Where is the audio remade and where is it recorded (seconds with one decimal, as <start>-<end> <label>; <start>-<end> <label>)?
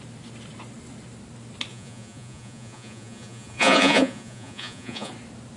0.0-1.7 recorded; 1.7-5.1 remade; 5.1-5.6 recorded